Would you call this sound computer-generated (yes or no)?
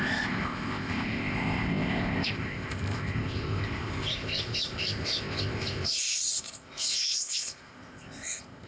yes